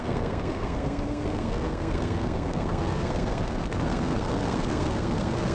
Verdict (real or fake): fake